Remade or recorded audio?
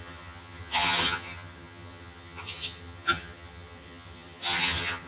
remade